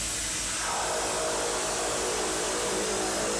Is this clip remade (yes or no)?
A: no